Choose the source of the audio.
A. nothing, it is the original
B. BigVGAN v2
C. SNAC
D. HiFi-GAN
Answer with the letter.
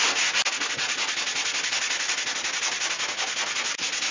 A